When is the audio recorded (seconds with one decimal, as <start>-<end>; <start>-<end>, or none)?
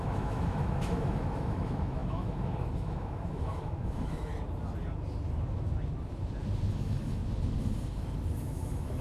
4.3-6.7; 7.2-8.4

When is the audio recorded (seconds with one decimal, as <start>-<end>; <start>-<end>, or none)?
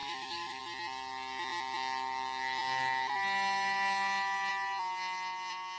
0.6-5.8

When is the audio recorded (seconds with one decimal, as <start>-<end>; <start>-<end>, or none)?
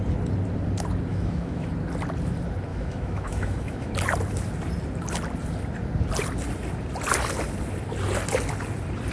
0.0-1.1; 1.7-2.7; 3.9-9.1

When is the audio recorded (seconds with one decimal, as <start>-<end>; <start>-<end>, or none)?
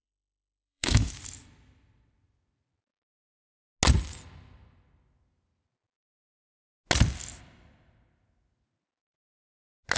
1.1-10.0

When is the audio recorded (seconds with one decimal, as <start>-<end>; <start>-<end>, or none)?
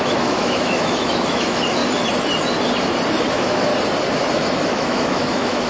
1.8-3.3; 3.7-4.3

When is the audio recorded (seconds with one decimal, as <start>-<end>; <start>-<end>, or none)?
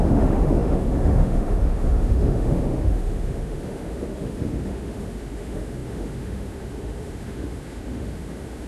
none